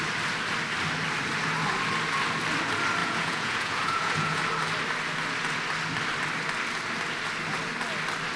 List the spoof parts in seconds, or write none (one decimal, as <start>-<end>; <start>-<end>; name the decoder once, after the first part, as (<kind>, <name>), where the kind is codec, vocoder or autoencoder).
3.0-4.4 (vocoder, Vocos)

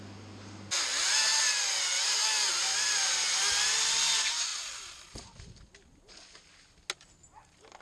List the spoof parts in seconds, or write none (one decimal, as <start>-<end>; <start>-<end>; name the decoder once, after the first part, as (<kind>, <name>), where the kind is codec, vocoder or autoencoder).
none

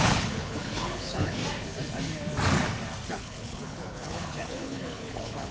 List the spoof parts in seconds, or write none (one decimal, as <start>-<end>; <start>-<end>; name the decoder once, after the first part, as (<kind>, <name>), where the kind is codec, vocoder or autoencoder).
0.0-1.4 (codec, HILCodec); 3.1-5.5

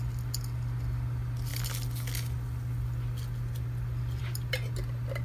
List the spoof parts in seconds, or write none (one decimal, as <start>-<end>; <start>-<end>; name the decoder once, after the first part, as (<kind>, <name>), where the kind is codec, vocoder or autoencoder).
none

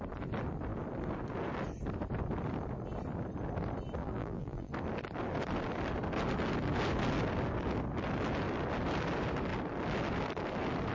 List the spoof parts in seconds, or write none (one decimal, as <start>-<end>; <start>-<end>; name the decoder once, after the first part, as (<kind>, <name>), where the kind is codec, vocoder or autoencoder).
4.0-4.7 (vocoder, BigVGAN v2)